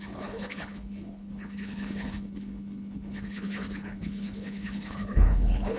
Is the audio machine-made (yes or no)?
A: yes